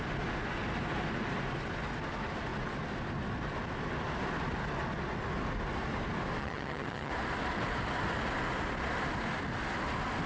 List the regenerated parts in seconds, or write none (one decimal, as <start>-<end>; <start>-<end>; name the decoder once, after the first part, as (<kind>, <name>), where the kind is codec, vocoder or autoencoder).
6.4-7.1 (vocoder, HiFi-GAN)